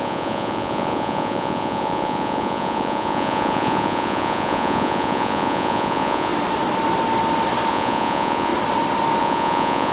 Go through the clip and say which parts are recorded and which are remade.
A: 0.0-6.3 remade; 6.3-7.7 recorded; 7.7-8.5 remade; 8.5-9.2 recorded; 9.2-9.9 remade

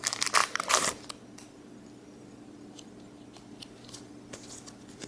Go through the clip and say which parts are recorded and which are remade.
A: 0.0-5.1 recorded